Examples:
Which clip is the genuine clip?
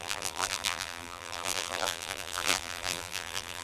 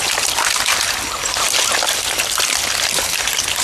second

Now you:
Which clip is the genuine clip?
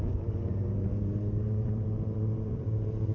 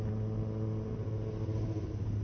second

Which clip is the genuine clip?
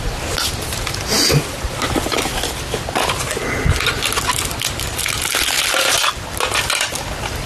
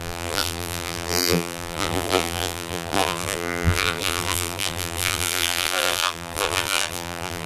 first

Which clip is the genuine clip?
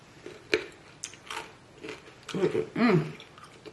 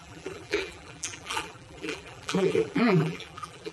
first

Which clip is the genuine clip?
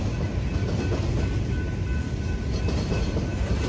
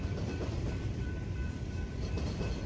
first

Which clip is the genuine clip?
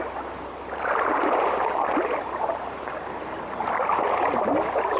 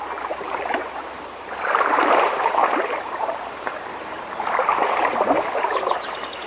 first